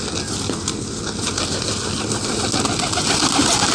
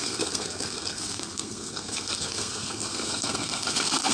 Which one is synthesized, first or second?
second